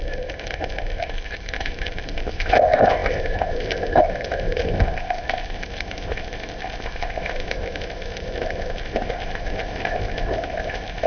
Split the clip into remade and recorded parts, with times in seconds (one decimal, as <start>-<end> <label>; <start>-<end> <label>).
0.0-11.1 remade